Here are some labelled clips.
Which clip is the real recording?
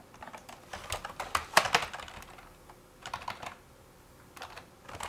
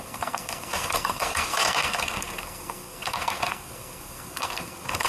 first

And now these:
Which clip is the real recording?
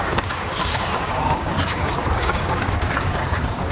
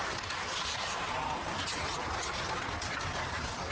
second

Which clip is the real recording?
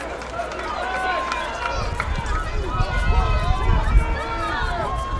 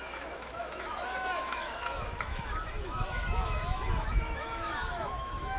first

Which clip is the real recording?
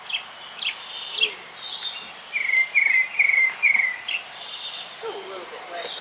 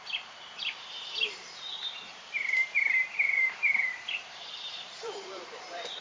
first